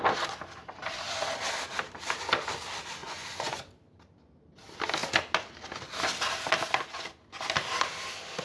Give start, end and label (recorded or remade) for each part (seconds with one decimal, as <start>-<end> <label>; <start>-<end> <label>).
0.0-3.0 recorded; 3.0-3.6 remade; 3.6-8.4 recorded